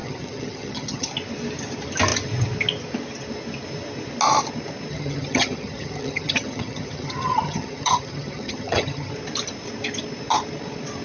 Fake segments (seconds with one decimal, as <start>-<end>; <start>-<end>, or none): 0.0-1.1; 4.9-9.1